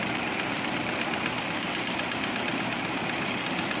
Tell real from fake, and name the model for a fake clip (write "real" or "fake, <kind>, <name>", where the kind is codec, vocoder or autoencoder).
real